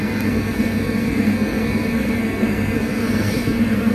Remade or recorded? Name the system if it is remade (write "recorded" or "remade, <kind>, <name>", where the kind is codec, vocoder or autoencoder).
remade, codec, SNAC